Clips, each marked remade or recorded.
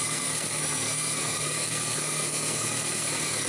remade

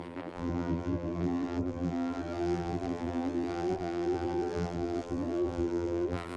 remade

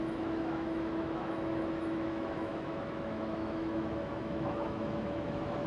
remade